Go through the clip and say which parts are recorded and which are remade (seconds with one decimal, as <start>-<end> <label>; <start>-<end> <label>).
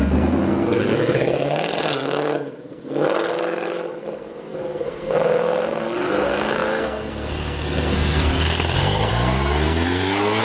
0.0-10.4 remade